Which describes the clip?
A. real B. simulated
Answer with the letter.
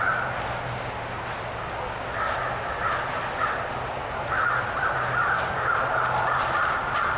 A